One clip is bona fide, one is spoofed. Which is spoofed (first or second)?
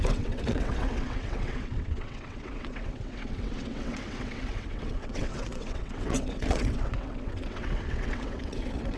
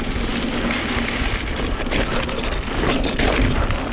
first